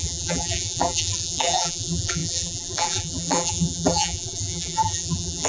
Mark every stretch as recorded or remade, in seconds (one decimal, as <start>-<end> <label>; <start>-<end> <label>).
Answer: 0.0-5.5 remade